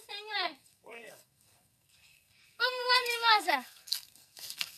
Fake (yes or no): yes